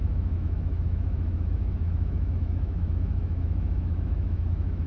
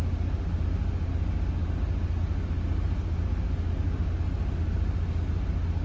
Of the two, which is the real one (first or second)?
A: second